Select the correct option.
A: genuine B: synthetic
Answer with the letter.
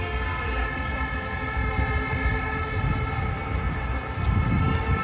A